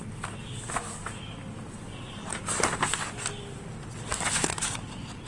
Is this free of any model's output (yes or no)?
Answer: yes